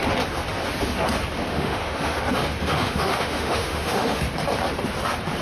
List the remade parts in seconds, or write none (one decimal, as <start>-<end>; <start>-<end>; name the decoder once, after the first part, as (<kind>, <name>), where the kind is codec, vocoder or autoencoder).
1.5-2.2 (autoencoder, DAC-VAE); 2.6-4.2